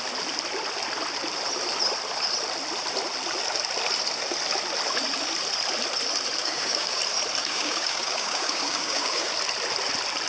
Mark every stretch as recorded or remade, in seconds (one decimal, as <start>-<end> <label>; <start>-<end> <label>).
0.0-6.4 recorded; 6.4-7.0 remade; 7.0-7.4 recorded; 7.4-9.3 remade; 9.3-10.3 recorded